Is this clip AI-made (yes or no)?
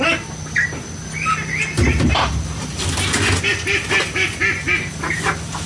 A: no